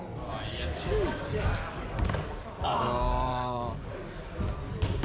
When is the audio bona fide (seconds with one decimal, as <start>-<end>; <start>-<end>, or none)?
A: 0.0-0.5; 2.5-3.3; 4.0-5.0